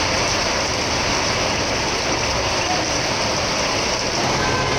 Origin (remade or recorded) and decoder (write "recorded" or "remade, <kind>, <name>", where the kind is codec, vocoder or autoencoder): recorded